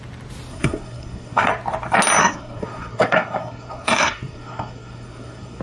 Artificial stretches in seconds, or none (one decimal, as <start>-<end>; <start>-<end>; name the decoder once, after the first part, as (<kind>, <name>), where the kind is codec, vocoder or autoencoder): 0.5-1.5 (codec, SNAC); 2.2-5.6